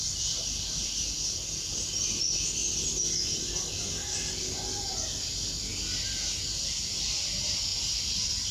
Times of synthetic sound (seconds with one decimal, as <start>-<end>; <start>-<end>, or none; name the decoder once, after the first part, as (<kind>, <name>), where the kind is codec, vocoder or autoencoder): 0.0-5.7 (vocoder, BigVGAN v2); 6.4-8.5